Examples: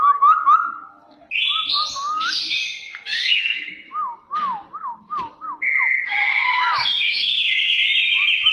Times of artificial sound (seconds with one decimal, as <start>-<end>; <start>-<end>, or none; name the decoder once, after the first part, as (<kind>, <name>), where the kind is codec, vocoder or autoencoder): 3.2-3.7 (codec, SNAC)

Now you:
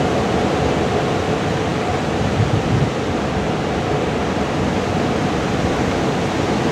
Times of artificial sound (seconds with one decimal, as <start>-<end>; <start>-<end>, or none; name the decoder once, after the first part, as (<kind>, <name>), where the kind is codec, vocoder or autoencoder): 1.7-2.6 (vocoder, BigVGAN v2); 4.2-5.5

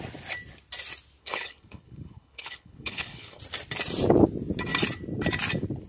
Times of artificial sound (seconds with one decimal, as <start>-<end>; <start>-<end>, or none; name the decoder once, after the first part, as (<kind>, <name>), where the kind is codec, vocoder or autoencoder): 1.2-3.4 (codec, HILCodec)